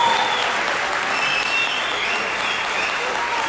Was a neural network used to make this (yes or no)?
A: no